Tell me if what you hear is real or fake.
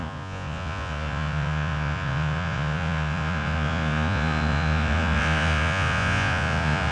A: fake